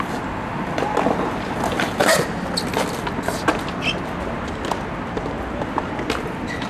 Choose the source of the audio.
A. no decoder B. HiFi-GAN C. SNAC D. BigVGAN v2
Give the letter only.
A